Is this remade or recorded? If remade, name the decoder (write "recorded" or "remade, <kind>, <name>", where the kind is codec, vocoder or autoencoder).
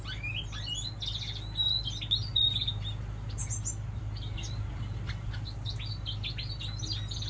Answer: recorded